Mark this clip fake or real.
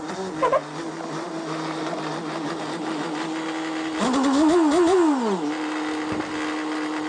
real